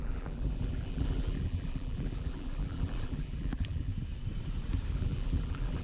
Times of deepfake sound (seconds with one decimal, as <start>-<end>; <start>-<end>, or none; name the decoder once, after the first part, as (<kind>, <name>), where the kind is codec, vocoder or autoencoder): 0.0-3.9 (vocoder, BigVGAN v2); 4.9-5.8